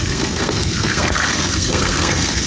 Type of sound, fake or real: fake